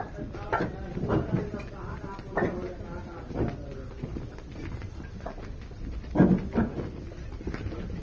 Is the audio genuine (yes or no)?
yes